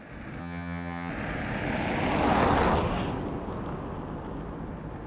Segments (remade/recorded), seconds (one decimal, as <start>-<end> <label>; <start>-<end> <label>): 0.0-0.4 recorded; 0.4-1.1 remade; 1.1-5.1 recorded